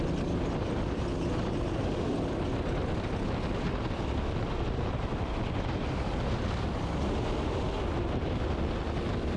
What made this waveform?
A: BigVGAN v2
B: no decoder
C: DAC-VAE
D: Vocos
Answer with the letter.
B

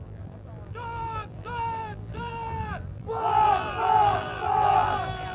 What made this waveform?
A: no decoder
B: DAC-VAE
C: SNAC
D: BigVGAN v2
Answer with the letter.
D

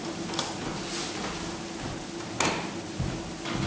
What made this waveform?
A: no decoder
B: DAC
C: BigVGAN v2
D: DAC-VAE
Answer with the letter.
A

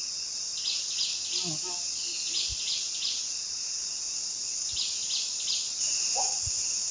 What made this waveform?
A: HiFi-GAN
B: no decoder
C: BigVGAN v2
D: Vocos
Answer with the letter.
B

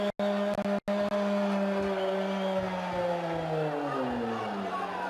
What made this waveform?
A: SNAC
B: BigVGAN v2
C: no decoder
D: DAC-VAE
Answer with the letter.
C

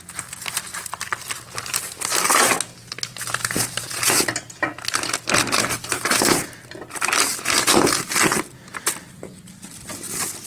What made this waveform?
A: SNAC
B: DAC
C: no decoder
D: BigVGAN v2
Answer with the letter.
C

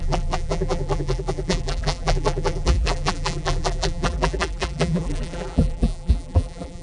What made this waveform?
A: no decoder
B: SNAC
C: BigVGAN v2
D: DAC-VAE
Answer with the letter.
C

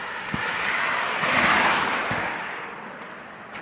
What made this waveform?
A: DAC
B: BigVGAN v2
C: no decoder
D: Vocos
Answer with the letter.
B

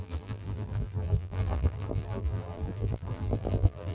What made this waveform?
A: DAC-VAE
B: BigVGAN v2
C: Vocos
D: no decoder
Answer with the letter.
B